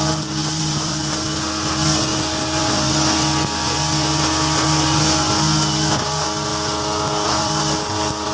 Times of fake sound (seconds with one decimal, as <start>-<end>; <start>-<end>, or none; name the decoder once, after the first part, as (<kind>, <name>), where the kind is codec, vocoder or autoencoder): 0.4-1.0 (vocoder, BigVGAN v2); 2.1-2.9; 6.5-7.6

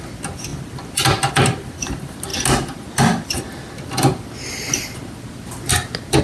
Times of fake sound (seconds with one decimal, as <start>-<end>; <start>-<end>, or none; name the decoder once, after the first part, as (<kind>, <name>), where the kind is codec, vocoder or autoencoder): none

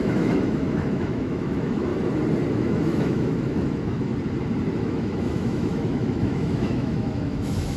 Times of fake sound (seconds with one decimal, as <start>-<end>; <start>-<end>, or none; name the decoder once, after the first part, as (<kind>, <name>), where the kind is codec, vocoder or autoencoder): 0.0-1.9 (autoencoder, DAC-VAE); 2.5-4.1; 4.8-7.8

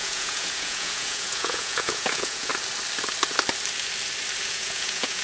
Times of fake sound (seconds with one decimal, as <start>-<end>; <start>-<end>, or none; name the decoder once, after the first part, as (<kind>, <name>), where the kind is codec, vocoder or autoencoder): 0.0-2.5 (vocoder, Vocos); 4.5-5.2

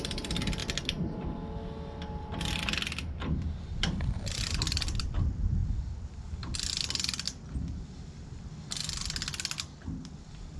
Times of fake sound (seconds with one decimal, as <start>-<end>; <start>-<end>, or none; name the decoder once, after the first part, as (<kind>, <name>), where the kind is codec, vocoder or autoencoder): 0.0-0.6 (vocoder, BigVGAN v2); 2.2-5.6

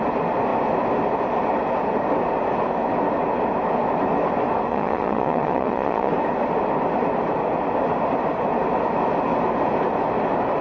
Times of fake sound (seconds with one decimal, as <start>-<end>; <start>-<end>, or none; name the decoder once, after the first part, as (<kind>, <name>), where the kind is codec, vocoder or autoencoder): 4.7-6.1 (vocoder, Vocos)

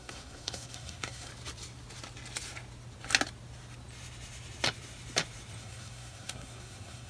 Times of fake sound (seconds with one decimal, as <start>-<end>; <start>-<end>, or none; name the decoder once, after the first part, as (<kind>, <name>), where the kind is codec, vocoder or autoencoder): 0.0-1.3 (codec, SNAC); 5.6-7.1

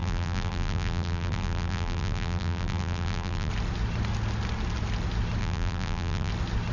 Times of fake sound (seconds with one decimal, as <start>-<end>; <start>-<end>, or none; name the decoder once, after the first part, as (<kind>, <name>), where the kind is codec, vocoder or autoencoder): 0.0-3.5 (vocoder, BigVGAN v2); 5.4-6.3